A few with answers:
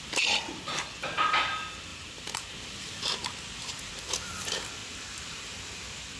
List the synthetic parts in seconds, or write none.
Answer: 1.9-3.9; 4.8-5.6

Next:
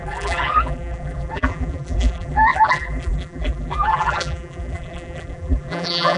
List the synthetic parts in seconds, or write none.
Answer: 0.0-6.2

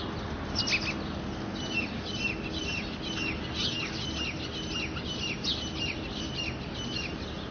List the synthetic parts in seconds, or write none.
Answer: none